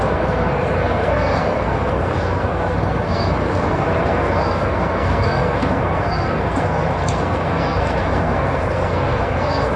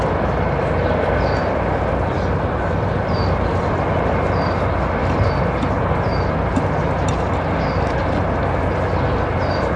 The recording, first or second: second